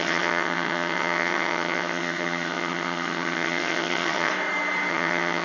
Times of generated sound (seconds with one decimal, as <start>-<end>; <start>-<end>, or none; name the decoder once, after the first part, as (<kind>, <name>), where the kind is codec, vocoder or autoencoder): 0.0-4.3 (vocoder, HiFi-GAN); 4.9-5.4